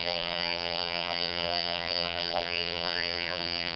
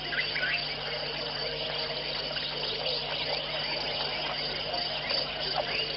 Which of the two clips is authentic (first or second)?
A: second